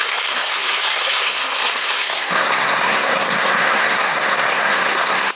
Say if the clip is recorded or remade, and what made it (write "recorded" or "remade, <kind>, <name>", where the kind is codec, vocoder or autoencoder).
remade, codec, SNAC